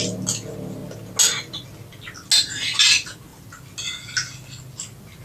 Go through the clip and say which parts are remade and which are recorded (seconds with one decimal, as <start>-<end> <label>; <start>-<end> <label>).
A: 0.0-5.2 recorded